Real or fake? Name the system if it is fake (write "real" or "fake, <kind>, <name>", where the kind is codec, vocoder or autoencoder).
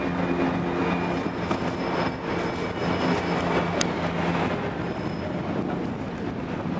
real